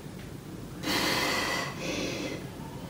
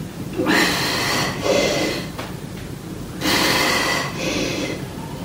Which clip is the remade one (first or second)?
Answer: second